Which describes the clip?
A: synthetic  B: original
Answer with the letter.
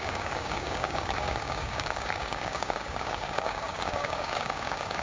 A